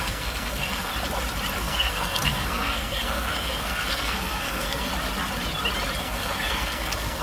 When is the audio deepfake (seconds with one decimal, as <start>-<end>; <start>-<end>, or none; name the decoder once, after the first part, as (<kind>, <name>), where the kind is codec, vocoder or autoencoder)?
0.0-0.9 (codec, SNAC); 1.6-4.9; 6.0-7.2